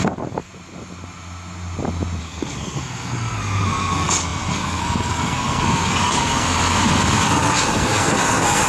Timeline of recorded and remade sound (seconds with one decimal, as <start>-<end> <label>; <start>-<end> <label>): 0.0-0.5 remade; 0.5-2.2 recorded; 2.2-8.7 remade